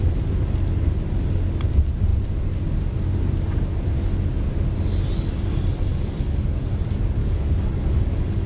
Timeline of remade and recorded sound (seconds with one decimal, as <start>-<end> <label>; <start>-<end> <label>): 0.0-5.9 recorded; 5.9-6.6 remade; 6.6-7.2 recorded; 7.2-8.5 remade